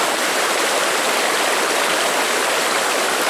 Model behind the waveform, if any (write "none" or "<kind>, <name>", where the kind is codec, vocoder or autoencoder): none